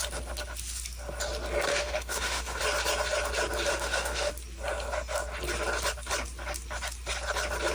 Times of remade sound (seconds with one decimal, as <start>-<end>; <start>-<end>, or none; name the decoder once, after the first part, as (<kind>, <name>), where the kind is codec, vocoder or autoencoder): 1.7-2.6 (autoencoder, DAC-VAE); 3.7-4.3